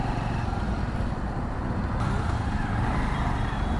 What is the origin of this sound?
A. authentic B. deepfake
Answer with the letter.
A